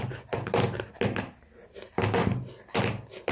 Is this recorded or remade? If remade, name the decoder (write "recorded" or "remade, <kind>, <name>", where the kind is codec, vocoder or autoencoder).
recorded